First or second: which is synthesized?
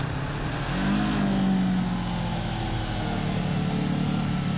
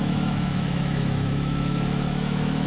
second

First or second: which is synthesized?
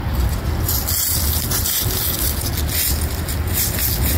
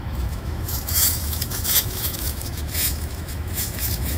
second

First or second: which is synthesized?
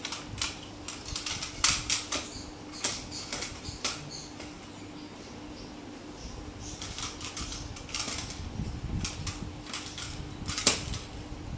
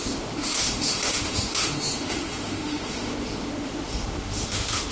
second